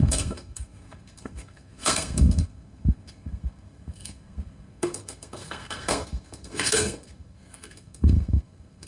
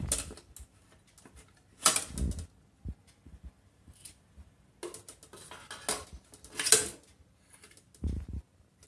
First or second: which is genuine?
second